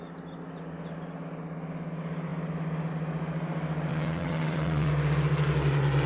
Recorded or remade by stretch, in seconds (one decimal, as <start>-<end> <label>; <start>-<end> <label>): 0.0-3.9 recorded; 3.9-4.9 remade; 4.9-6.1 recorded